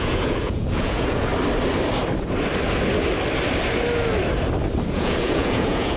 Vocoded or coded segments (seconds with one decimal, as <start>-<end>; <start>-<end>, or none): 0.0-1.3; 4.9-6.0